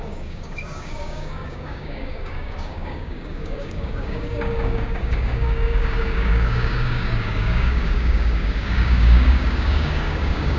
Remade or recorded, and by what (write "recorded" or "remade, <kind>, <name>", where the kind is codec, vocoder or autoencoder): remade, codec, DAC